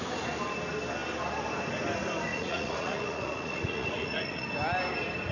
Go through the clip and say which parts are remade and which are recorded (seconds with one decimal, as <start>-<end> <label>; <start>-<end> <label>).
0.0-2.3 recorded; 2.3-4.5 remade; 4.5-5.3 recorded